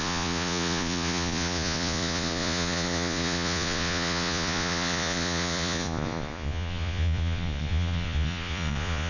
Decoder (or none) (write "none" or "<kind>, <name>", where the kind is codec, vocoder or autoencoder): vocoder, Vocos